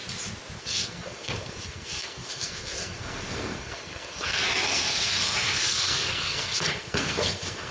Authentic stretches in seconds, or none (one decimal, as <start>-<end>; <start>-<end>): 0.0-0.6